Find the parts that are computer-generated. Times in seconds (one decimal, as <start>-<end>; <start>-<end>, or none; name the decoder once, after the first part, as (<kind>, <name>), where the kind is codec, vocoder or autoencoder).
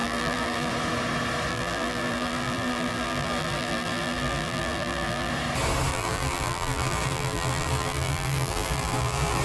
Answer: 0.0-0.7 (vocoder, BigVGAN v2); 1.5-5.3; 5.9-9.4